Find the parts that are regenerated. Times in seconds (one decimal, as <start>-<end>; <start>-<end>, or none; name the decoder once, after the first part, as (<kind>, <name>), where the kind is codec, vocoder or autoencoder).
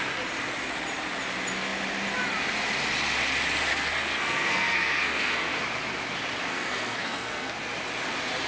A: 3.7-5.6 (codec, SNAC); 6.5-7.6